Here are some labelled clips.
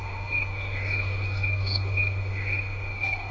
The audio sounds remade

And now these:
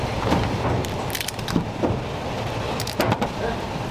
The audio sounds recorded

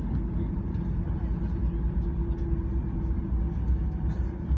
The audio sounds recorded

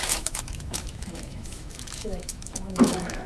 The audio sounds remade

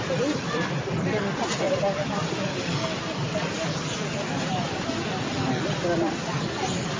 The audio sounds recorded